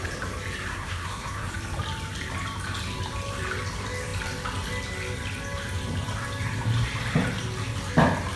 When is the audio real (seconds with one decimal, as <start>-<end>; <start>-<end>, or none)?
0.0-0.7; 1.5-8.4